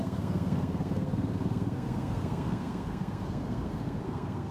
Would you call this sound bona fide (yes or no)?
no